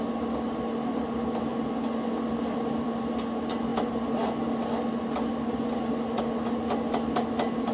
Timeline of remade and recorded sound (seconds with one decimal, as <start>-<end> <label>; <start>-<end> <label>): 0.0-7.7 recorded

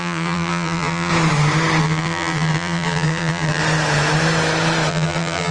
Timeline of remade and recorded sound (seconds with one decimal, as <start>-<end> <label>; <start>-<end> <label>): 0.0-1.1 remade; 1.1-1.8 recorded; 1.8-3.6 remade; 3.6-4.9 recorded; 4.9-5.5 remade

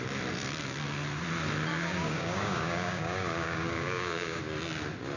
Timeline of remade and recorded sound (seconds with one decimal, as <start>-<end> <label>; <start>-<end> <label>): 0.0-1.7 recorded; 1.7-4.4 remade; 4.4-5.2 recorded

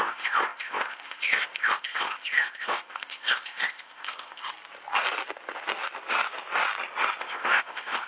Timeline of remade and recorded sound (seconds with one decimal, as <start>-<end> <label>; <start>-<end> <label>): 0.0-4.5 remade; 4.5-7.2 recorded; 7.2-8.1 remade